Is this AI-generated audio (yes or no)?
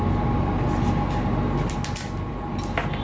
no